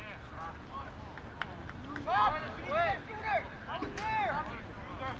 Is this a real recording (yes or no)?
yes